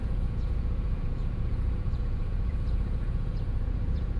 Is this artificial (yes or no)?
yes